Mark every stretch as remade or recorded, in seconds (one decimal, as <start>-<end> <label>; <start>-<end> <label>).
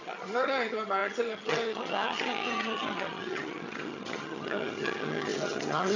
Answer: 0.0-6.0 remade